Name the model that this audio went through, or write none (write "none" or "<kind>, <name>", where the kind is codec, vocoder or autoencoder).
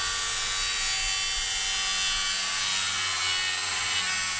none